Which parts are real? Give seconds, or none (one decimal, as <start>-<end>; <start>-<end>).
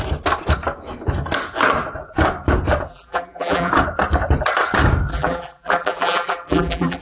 0.0-2.9; 3.7-5.1